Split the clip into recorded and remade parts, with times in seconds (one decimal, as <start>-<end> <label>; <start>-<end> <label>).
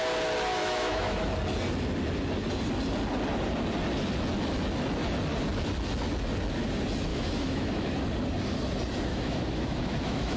0.0-0.6 recorded; 0.6-1.3 remade; 1.3-7.1 recorded; 7.1-8.0 remade; 8.0-9.1 recorded; 9.1-10.4 remade